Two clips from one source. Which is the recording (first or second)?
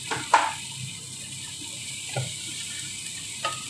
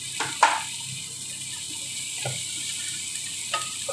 second